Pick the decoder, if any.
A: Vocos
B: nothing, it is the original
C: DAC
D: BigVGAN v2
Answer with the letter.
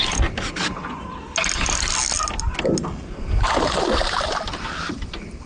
B